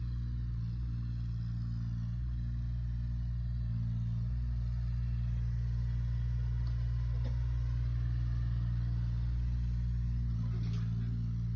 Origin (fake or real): real